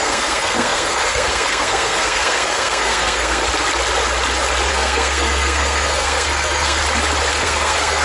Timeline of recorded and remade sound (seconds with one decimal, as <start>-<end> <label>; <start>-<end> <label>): 0.0-3.4 remade; 3.4-4.7 recorded; 4.7-6.8 remade; 6.8-7.3 recorded; 7.3-8.0 remade